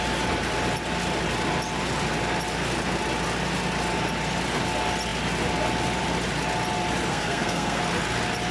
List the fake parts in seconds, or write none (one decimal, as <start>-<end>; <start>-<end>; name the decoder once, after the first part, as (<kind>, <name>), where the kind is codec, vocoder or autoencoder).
7.1-7.8 (codec, SNAC)